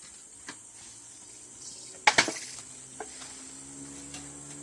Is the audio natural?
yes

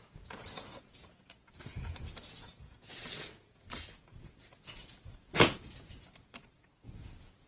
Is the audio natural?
no